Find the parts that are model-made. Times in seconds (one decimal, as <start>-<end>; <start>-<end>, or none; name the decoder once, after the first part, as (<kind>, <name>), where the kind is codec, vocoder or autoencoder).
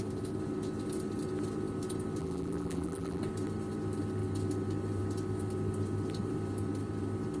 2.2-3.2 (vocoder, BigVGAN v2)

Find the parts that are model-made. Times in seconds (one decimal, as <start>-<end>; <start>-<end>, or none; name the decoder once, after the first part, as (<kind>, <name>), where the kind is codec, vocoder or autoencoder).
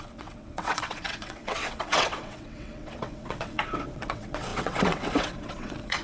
0.0-6.0 (vocoder, WaveNeXt)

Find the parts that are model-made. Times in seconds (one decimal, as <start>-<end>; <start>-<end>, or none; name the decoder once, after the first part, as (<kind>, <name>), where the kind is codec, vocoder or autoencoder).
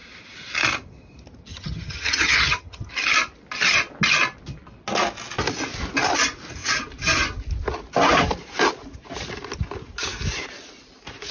1.5-2.9 (vocoder, HiFi-GAN)